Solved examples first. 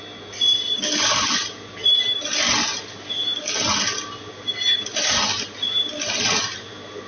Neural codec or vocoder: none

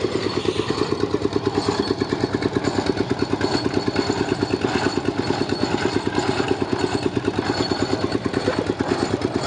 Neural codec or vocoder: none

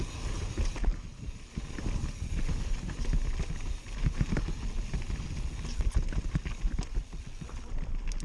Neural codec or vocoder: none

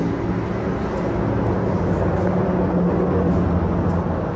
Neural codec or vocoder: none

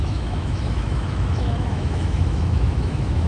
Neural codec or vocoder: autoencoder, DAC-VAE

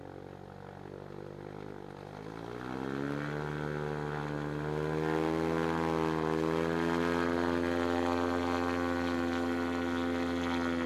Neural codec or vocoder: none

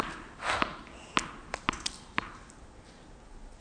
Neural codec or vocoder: none